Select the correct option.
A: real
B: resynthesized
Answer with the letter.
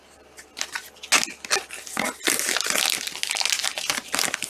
A